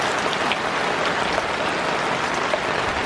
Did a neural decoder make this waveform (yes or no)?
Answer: no